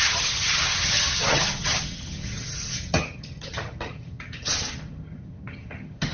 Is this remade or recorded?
remade